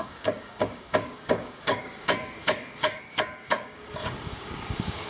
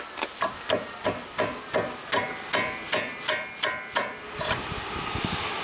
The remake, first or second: first